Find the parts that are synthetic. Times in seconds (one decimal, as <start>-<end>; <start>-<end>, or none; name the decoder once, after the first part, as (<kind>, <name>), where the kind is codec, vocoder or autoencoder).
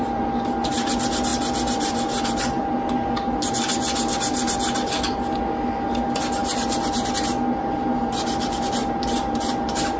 none